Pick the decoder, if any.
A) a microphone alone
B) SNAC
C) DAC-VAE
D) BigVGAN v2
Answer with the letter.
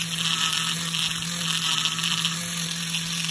A